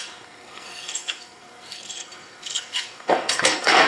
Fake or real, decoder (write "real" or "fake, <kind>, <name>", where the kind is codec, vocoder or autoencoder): fake, codec, SNAC